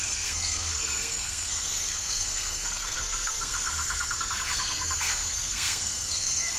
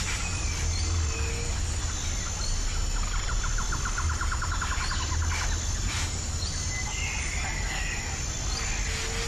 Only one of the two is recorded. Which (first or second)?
second